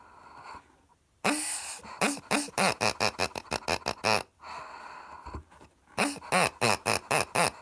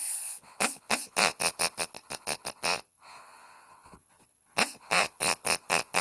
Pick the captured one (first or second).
first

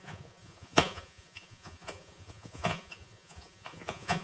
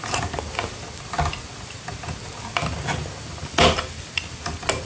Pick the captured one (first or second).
second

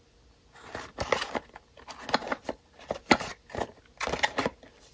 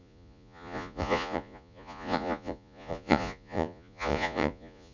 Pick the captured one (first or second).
first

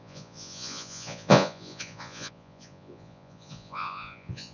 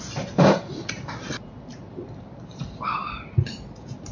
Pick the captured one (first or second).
second